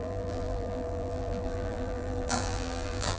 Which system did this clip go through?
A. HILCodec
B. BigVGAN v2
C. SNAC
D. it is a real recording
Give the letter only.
B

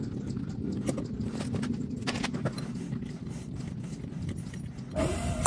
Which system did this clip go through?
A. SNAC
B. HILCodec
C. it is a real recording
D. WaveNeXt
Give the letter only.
C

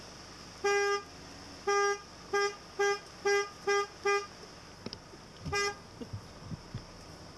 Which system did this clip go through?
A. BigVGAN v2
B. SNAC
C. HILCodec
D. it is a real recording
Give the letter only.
D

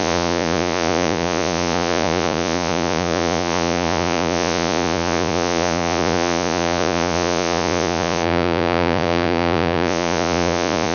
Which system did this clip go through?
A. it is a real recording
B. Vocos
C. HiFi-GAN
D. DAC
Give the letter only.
B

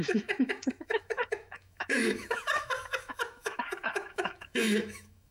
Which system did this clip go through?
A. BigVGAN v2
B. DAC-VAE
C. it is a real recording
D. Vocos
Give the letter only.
B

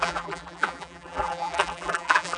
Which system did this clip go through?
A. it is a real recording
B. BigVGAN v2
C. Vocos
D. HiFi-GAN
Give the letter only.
B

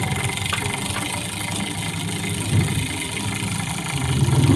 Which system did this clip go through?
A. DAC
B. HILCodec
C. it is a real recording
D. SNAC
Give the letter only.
C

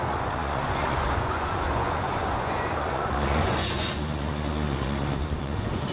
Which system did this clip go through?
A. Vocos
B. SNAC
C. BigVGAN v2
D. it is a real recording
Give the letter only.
A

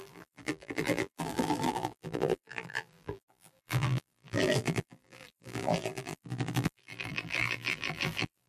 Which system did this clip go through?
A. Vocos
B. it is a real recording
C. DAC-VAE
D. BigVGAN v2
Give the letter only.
D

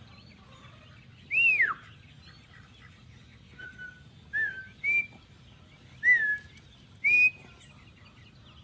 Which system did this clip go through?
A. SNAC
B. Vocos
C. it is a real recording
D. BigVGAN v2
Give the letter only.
C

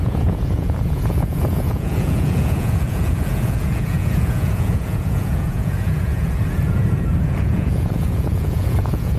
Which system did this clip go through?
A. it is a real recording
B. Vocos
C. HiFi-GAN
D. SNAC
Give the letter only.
B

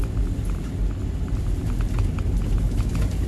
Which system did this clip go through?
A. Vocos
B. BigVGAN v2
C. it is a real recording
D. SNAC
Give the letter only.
C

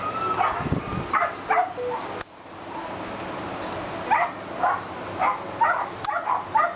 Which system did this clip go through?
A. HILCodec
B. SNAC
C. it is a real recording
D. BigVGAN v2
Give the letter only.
C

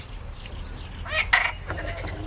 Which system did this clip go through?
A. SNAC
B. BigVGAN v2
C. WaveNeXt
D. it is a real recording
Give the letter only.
D